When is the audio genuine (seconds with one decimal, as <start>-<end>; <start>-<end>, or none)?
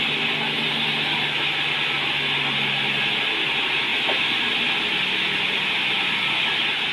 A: 0.0-6.9